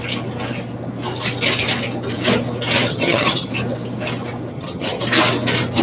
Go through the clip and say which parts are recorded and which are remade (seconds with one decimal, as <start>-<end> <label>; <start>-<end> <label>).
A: 0.0-2.9 recorded; 2.9-3.5 remade; 3.5-4.5 recorded; 4.5-5.0 remade; 5.0-5.8 recorded